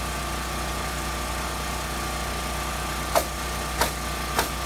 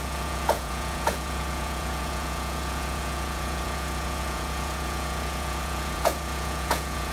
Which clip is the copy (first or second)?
second